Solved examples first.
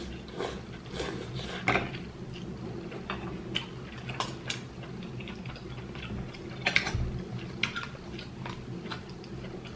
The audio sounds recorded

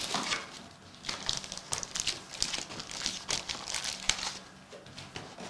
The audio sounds recorded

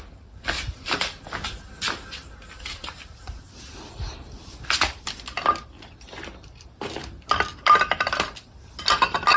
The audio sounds recorded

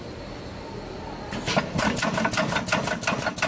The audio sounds recorded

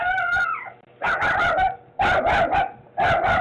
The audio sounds recorded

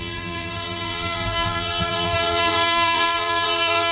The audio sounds remade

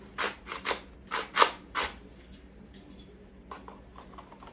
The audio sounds recorded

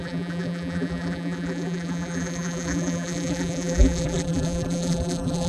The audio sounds remade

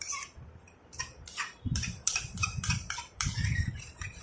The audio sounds remade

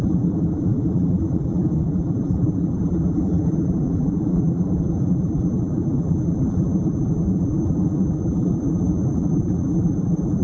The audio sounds remade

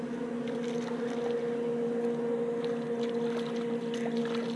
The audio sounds recorded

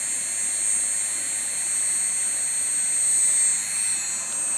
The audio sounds recorded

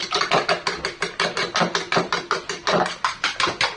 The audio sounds recorded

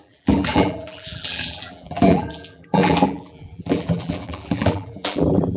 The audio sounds remade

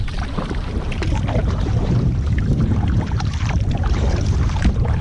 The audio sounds remade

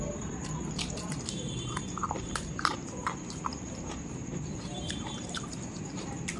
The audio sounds remade